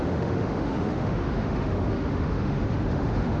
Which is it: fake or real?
fake